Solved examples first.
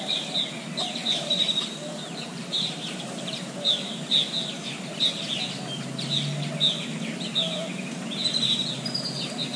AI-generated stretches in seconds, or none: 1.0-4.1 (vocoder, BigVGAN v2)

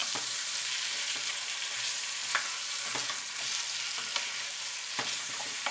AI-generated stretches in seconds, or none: 0.0-2.2 (vocoder, BigVGAN v2); 5.2-5.7

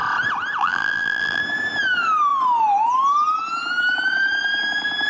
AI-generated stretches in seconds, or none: 0.6-1.4 (vocoder, BigVGAN v2)

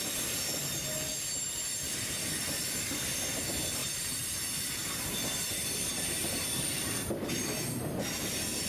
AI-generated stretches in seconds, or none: 3.8-7.1 (vocoder, BigVGAN v2)

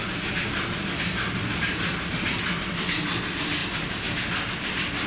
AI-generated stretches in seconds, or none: none